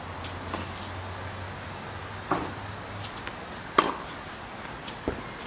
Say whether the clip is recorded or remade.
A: recorded